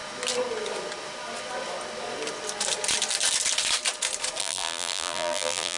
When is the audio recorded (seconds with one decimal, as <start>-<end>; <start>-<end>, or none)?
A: 0.0-4.4